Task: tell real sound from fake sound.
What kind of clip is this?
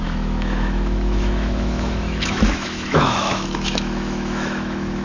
fake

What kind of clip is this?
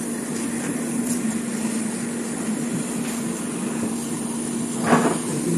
real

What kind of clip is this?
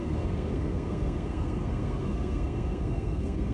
fake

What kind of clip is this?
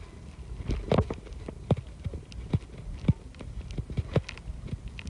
real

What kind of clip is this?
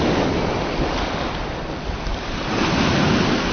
real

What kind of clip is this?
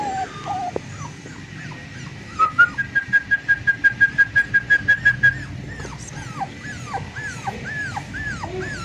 real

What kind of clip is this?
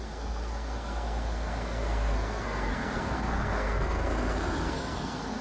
fake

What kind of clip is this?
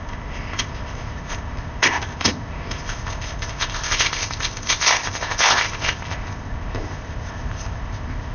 fake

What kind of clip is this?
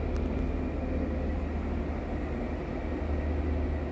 real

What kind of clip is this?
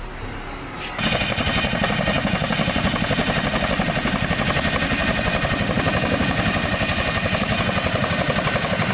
real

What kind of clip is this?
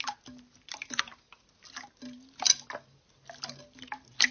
real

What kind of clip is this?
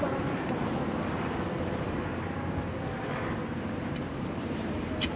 fake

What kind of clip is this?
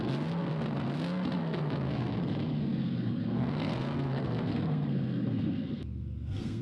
fake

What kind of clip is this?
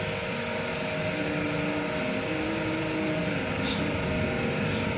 real